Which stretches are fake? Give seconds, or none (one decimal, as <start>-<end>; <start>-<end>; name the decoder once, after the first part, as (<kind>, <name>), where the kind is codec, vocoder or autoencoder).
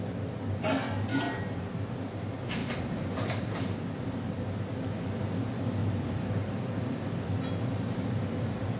1.1-2.1 (vocoder, BigVGAN v2); 2.6-4.3; 5.8-6.5